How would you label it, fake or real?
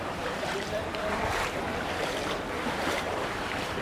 fake